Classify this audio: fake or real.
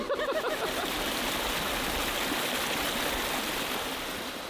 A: real